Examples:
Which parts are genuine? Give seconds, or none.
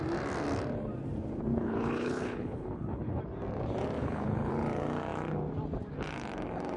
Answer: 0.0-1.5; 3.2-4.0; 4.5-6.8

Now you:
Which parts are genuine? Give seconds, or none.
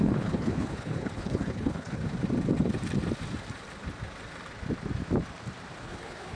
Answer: 2.0-5.8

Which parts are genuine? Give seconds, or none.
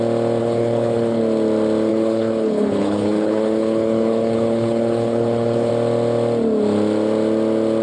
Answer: 0.0-0.4; 1.2-1.9; 5.7-7.8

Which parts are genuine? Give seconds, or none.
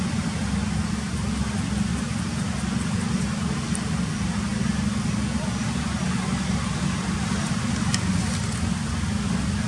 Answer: 0.0-9.7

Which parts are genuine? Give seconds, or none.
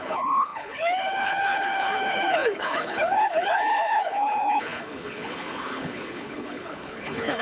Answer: none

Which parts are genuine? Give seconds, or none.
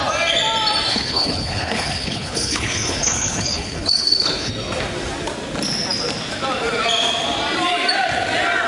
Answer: 0.0-0.9; 4.5-8.7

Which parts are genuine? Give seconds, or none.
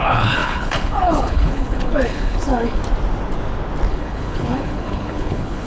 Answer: 2.8-3.9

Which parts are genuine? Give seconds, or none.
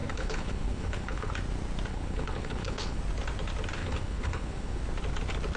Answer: 1.3-1.9; 3.0-3.8; 4.8-5.6